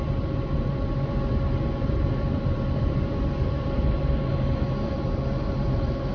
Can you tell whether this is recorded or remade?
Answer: remade